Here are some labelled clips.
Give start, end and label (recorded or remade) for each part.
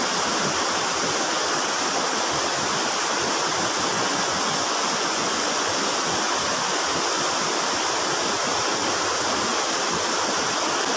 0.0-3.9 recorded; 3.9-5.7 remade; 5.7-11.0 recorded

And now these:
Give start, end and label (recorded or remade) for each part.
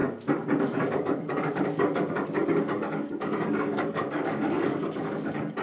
0.0-0.6 recorded; 0.6-5.6 remade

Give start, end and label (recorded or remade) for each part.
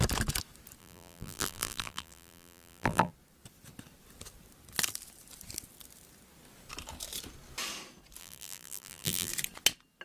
0.0-0.8 recorded; 0.8-3.1 remade; 3.1-8.2 recorded; 8.2-9.3 remade; 9.3-10.0 recorded